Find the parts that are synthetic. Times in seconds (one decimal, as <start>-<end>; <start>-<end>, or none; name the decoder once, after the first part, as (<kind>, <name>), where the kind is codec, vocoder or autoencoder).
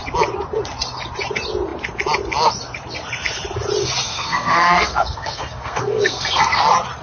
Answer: 4.1-6.6 (codec, SNAC)